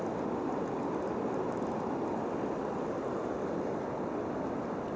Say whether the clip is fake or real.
real